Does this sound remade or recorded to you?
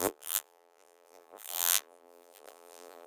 remade